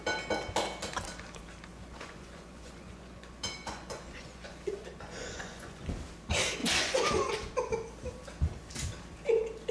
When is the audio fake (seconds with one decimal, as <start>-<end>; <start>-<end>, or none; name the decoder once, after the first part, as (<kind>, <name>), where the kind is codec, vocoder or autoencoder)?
1.7-5.9 (vocoder, Vocos); 6.6-7.3

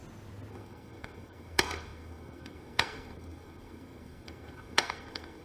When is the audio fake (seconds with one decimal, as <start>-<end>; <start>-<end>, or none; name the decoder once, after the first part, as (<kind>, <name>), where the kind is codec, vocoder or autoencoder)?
0.5-5.4 (codec, SNAC)

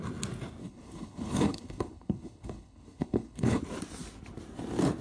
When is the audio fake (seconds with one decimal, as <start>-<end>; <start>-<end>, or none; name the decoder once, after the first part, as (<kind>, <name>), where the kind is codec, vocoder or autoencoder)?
0.6-3.6 (codec, HILCodec)

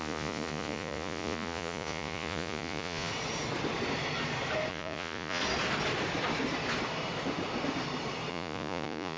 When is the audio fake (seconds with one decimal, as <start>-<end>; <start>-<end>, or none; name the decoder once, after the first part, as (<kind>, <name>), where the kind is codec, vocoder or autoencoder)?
0.0-3.1 (vocoder, Vocos); 4.7-5.4; 8.3-9.2